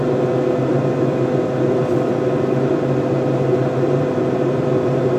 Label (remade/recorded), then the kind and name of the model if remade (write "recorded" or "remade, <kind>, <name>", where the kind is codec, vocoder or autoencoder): recorded